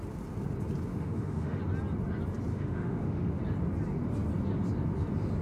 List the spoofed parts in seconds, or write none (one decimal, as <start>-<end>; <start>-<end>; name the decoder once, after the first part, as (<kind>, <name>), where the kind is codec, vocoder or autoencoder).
0.9-1.6 (autoencoder, DAC-VAE); 2.5-3.4